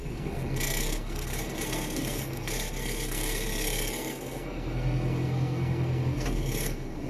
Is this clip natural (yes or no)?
no